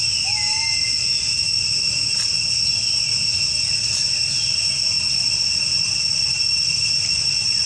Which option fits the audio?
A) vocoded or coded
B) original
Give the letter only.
B